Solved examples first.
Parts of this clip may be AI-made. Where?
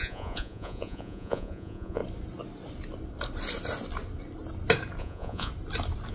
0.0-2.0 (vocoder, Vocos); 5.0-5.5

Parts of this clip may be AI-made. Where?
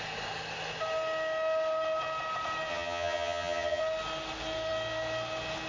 2.7-3.8 (vocoder, HiFi-GAN)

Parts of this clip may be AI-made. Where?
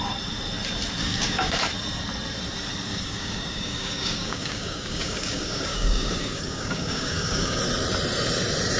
1.0-1.6 (codec, DAC); 2.9-7.6